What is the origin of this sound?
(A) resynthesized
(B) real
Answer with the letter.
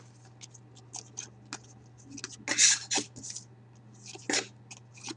B